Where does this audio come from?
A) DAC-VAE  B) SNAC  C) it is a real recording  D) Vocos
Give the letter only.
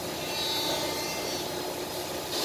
C